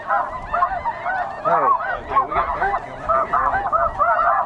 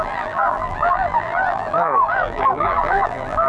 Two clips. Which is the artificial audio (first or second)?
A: second